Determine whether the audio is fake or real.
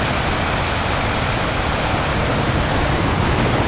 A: real